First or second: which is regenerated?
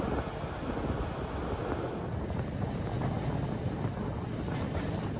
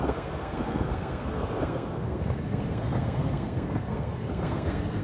second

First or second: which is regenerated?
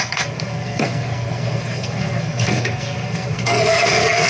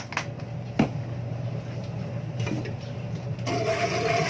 first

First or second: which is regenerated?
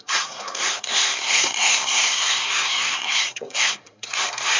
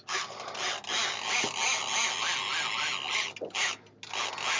first